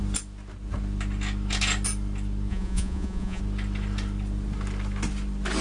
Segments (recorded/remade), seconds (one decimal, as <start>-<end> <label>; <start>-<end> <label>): 0.0-2.5 recorded; 2.5-3.4 remade; 3.4-5.6 recorded